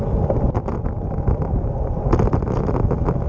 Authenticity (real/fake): real